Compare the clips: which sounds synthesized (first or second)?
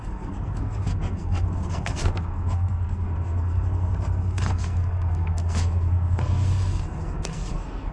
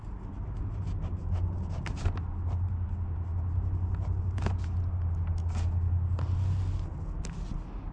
first